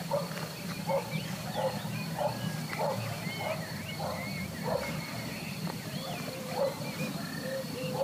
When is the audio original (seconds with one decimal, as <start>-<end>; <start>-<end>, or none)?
0.0-5.1; 7.1-8.0